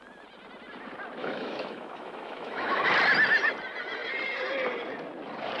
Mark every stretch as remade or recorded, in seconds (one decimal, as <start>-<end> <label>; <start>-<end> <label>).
0.0-1.2 recorded; 1.2-2.9 remade; 2.9-5.6 recorded